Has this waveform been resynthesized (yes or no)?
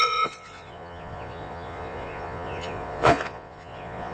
yes